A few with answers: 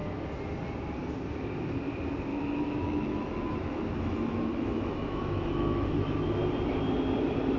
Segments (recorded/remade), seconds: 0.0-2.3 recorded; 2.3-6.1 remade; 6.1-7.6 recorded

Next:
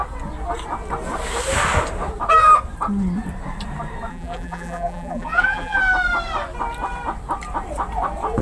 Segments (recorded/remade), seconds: 0.0-4.1 recorded; 4.1-5.8 remade; 5.8-8.4 recorded

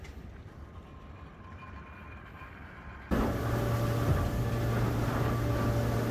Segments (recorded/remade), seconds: 0.0-6.1 recorded

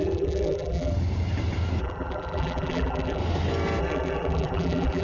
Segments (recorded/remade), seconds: 0.0-0.9 remade; 0.9-1.8 recorded; 1.8-3.2 remade; 3.2-3.8 recorded; 3.8-5.0 remade

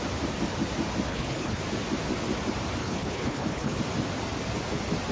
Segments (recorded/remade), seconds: 0.0-1.1 recorded; 1.1-1.6 remade; 1.6-2.8 recorded; 2.8-3.8 remade; 3.8-5.1 recorded

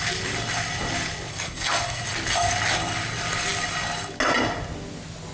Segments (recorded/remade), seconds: 0.0-1.3 recorded; 1.3-2.0 remade; 2.0-5.3 recorded

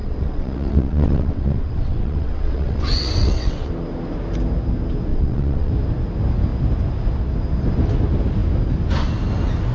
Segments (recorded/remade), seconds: 0.0-3.7 remade; 3.7-5.1 recorded; 5.1-5.7 remade; 5.7-9.7 recorded

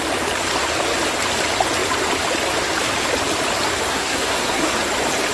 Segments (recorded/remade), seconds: 0.0-3.9 recorded; 3.9-4.7 remade; 4.7-5.3 recorded